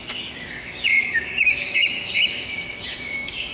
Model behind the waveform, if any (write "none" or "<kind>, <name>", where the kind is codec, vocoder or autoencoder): codec, DAC